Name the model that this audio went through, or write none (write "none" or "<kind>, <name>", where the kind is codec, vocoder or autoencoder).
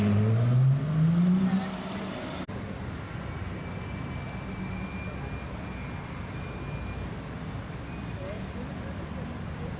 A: none